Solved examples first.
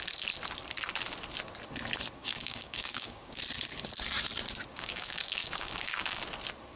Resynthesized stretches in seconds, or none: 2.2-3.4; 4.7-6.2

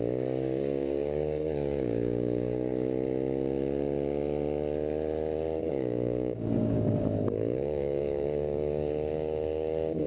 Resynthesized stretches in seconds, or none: 0.0-2.7; 5.7-10.1

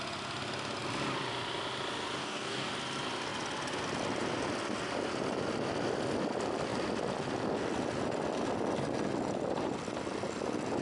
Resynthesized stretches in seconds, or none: 2.2-2.7

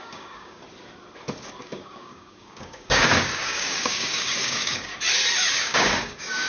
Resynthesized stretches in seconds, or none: 0.0-0.6; 1.6-4.9; 5.5-6.5

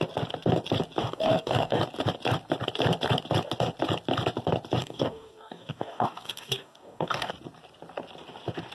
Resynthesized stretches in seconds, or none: 1.0-1.8; 4.8-7.3

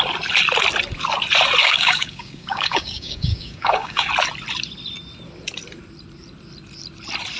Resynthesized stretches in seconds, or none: 1.6-4.1

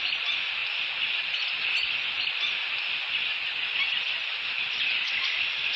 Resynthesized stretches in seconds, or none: none